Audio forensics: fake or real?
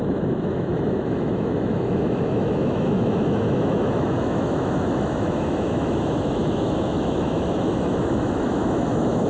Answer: fake